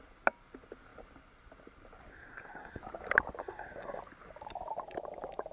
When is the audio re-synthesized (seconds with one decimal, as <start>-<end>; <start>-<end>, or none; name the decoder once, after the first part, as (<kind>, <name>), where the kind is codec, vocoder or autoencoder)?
2.1-2.8 (codec, SNAC); 3.4-4.0